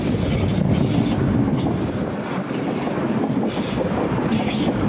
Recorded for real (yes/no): yes